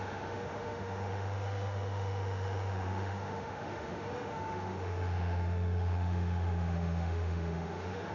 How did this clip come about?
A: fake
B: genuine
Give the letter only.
A